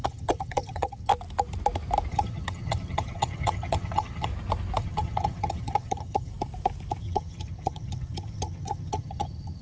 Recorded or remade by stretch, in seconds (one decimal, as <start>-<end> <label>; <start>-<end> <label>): 0.0-1.1 remade; 1.1-2.1 recorded; 2.1-4.3 remade; 4.3-4.8 recorded; 4.8-6.3 remade; 6.3-7.0 recorded; 7.0-9.6 remade